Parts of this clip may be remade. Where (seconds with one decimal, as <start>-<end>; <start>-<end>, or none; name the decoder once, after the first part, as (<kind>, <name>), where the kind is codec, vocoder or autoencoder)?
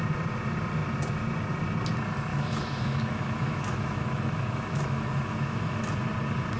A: 2.3-5.8 (autoencoder, DAC-VAE)